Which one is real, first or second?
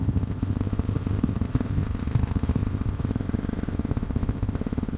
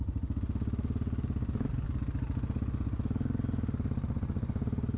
second